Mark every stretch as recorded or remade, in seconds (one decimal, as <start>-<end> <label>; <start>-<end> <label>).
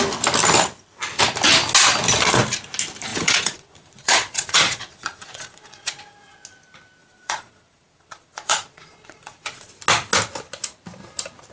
0.0-3.1 recorded; 3.1-6.0 remade; 6.0-7.0 recorded; 7.0-9.7 remade; 9.7-11.5 recorded